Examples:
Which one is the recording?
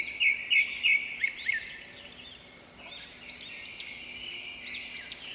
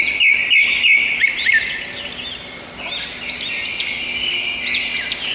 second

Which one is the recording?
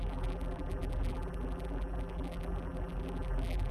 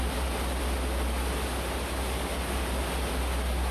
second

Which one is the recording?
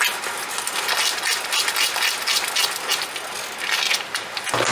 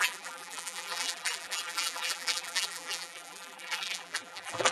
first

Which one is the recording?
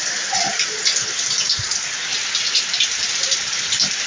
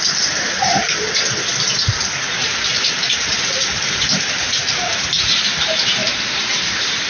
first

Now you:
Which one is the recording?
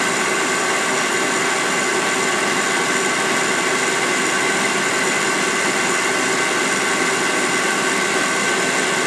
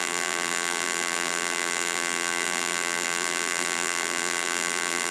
first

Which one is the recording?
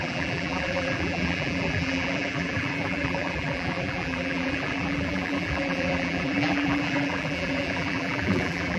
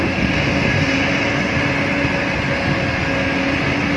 second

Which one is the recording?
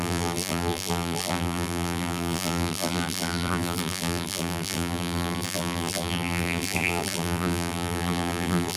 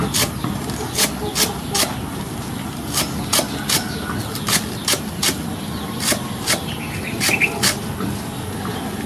second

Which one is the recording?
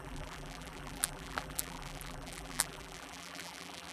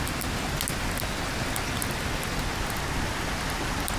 second